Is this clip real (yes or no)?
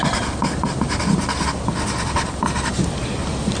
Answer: yes